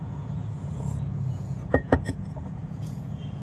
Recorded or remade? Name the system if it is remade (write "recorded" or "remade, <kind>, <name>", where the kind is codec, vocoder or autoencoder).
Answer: remade, vocoder, Vocos